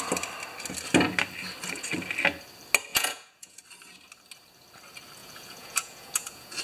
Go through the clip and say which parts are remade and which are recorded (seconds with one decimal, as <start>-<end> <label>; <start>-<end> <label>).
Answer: 0.0-2.9 recorded; 2.9-3.6 remade; 3.6-5.2 recorded; 5.2-6.6 remade